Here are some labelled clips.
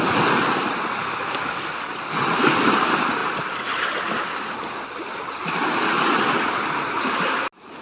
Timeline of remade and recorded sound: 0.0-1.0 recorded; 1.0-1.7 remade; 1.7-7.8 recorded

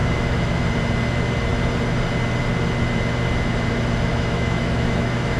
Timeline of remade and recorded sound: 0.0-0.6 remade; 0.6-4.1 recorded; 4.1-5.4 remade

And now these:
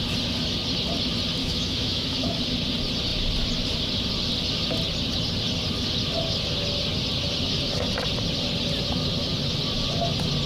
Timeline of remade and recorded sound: 0.0-1.4 recorded; 1.4-2.4 remade; 2.4-10.5 recorded